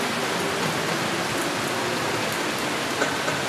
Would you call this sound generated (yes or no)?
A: no